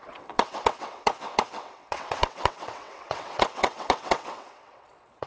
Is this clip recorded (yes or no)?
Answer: no